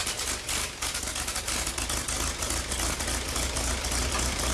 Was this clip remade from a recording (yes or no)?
no